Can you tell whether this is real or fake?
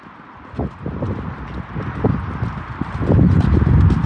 real